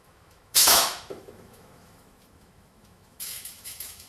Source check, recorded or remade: remade